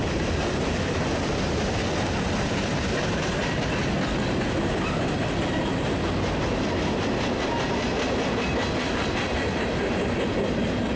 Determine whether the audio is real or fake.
real